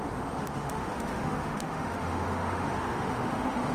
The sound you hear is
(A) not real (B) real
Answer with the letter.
A